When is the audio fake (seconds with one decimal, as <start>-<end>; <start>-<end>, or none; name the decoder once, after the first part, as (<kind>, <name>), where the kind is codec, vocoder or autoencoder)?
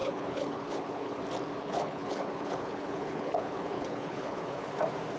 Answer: 0.0-1.2 (codec, HILCodec); 1.6-4.7